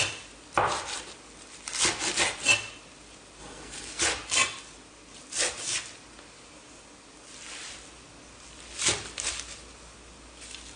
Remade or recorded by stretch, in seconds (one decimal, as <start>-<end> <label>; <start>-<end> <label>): 0.0-3.4 recorded; 3.4-4.0 remade; 4.0-10.8 recorded